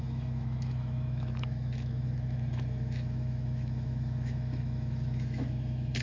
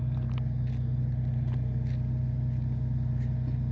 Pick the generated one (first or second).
first